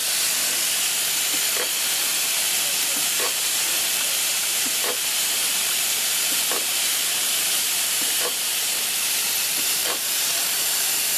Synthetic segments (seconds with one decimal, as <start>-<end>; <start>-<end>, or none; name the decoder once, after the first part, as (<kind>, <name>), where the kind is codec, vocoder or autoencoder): 1.8-11.2 (vocoder, BigVGAN v2)